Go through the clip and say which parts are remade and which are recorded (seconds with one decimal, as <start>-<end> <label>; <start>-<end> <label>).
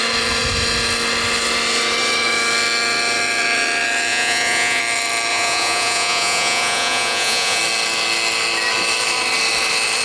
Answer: 0.0-4.1 recorded; 4.1-4.8 remade; 4.8-5.3 recorded; 5.3-7.6 remade; 7.6-10.0 recorded